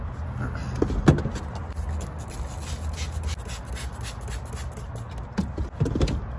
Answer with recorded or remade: recorded